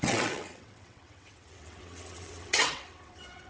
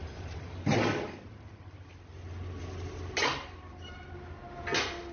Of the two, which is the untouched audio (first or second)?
second